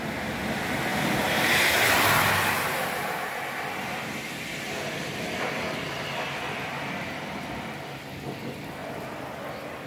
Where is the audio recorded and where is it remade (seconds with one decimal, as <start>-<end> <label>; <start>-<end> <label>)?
0.0-9.9 recorded